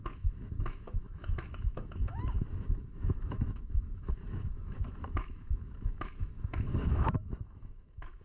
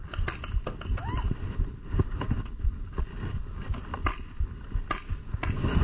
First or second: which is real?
second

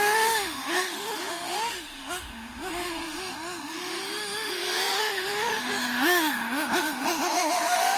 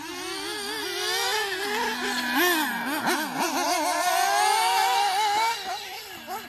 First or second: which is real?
second